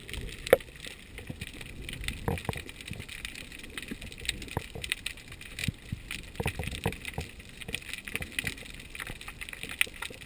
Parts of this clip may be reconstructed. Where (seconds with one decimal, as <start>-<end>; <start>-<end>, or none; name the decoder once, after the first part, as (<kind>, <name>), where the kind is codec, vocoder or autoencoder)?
none